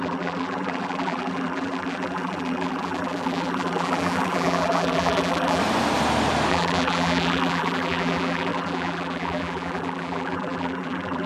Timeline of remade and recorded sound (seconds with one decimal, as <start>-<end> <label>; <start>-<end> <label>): 0.0-5.6 remade; 5.6-6.5 recorded; 6.5-11.3 remade